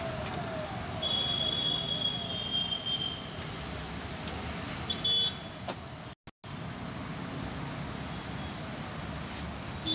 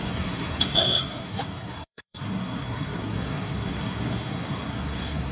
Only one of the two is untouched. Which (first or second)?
first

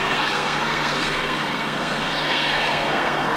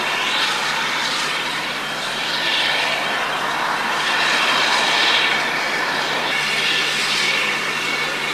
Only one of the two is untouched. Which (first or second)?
second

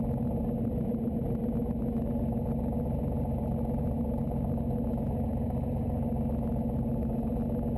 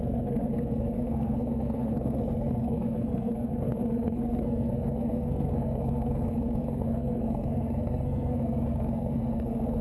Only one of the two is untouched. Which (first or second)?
first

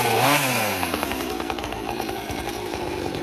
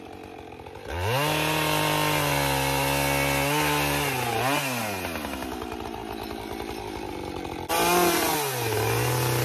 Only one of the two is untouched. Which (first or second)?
second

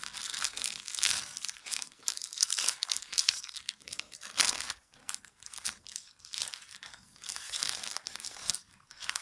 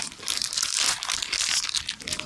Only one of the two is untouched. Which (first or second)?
second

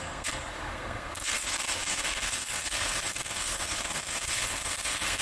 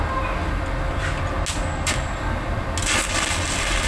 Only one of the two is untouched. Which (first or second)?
second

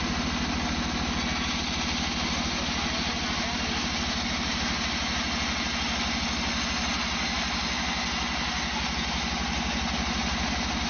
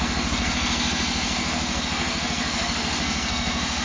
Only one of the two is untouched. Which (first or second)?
first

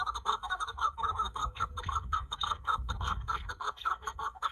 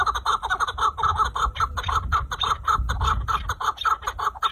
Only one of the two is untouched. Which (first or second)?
second